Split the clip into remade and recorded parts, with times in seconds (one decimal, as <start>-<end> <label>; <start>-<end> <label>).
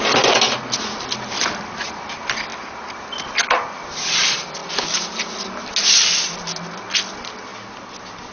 0.0-8.3 recorded